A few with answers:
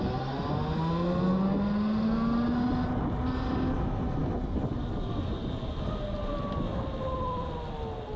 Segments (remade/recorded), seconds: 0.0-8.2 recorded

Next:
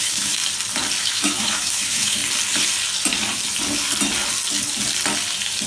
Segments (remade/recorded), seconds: 0.0-0.4 remade; 0.4-1.0 recorded; 1.0-2.2 remade; 2.2-5.7 recorded

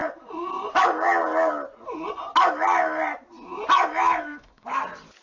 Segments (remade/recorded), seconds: 0.0-3.9 recorded; 3.9-4.7 remade; 4.7-5.2 recorded

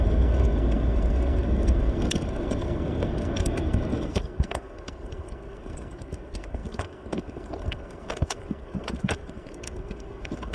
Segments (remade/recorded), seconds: 0.0-10.5 remade

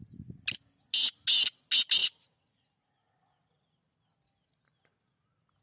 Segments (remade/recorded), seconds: 0.0-2.0 recorded; 2.0-3.1 remade; 3.1-5.6 recorded

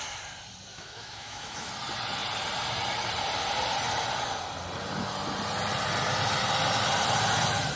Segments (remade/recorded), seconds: 0.0-0.7 recorded; 0.7-1.7 remade; 1.7-7.8 recorded

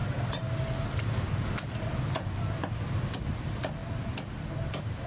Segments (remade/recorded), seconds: 0.0-5.1 recorded

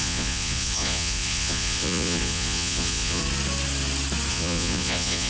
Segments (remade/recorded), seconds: 0.0-3.2 remade; 3.2-4.3 recorded; 4.3-5.3 remade